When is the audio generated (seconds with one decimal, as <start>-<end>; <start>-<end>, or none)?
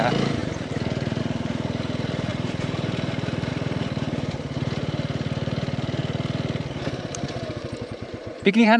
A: 0.0-6.0; 6.7-8.8